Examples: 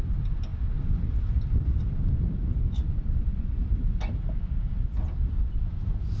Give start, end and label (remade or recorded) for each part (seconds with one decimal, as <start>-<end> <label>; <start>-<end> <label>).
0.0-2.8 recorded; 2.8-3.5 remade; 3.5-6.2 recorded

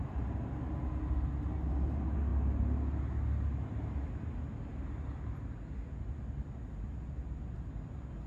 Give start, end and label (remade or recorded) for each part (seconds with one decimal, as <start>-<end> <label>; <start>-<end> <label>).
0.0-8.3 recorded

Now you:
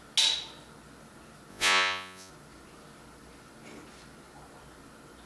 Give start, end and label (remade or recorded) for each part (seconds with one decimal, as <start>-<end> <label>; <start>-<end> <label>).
0.0-1.5 recorded; 1.5-2.3 remade; 2.3-5.3 recorded

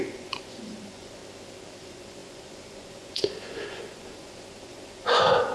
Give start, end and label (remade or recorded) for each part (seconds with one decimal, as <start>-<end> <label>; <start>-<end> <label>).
0.0-1.2 remade; 1.2-1.8 recorded; 1.8-5.5 remade

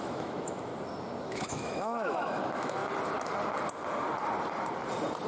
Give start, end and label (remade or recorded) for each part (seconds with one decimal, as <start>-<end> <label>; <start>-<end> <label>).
0.0-0.7 remade; 0.7-1.2 recorded; 1.2-2.8 remade; 2.8-5.3 recorded

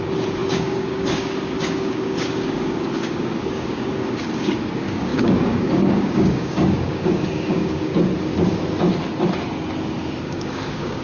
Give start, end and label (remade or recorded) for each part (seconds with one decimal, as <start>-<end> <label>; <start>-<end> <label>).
0.0-7.9 remade; 7.9-10.2 recorded; 10.2-11.0 remade